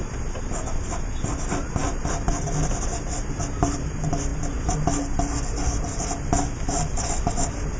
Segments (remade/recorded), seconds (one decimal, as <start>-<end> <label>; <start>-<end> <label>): 0.0-4.3 recorded; 4.3-7.8 remade